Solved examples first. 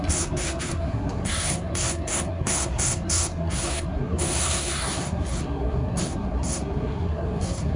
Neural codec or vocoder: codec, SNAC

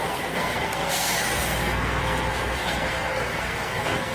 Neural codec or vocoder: codec, SNAC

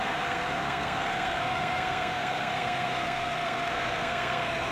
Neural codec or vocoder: codec, SNAC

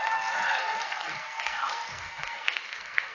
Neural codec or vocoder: codec, SNAC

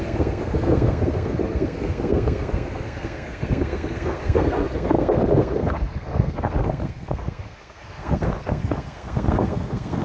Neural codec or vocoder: codec, SNAC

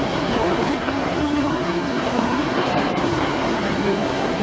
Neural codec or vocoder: codec, SNAC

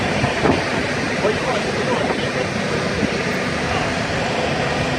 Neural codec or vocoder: none